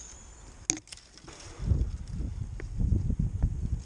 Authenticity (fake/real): real